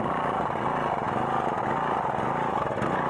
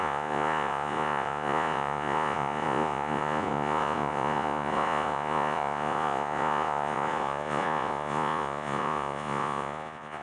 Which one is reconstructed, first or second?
second